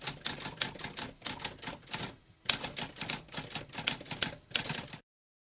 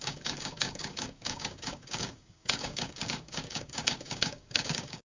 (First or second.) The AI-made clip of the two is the second